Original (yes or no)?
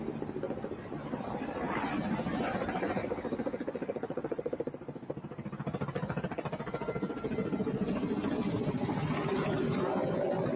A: yes